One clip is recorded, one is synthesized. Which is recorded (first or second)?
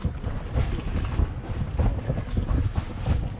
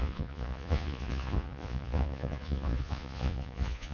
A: first